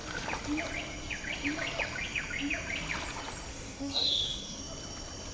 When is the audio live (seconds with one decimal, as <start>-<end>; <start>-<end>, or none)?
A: 0.0-3.5; 4.6-5.3